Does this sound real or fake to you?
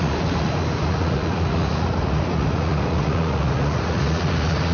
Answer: fake